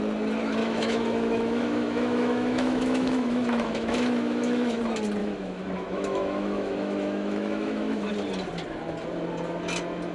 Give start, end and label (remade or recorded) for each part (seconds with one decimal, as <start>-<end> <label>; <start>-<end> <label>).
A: 0.0-0.6 recorded; 0.6-4.8 remade; 4.8-5.2 recorded; 5.2-8.1 remade; 8.1-10.1 recorded